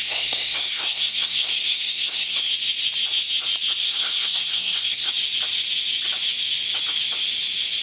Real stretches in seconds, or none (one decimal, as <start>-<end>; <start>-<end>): 2.5-3.8; 5.1-7.8